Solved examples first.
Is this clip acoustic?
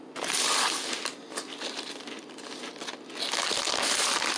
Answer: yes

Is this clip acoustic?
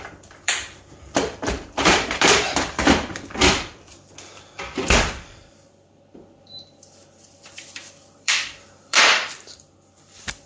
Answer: no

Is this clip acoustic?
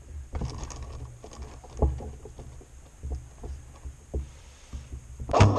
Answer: yes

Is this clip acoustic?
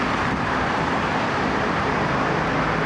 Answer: no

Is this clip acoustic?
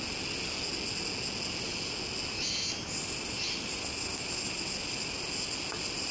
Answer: yes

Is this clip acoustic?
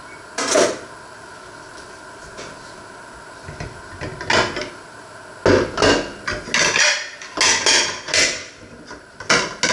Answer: yes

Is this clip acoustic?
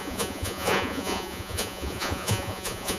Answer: no